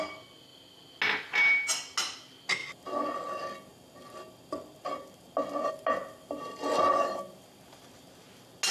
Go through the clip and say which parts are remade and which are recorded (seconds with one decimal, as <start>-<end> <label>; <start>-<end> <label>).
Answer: 0.0-8.7 recorded